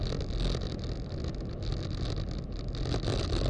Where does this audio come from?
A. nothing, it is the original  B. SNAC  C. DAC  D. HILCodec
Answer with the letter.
A